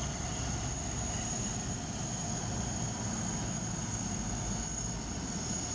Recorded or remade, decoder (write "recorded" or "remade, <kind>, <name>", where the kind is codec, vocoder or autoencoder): recorded